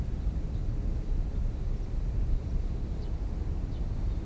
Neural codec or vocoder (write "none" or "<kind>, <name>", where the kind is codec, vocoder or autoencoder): none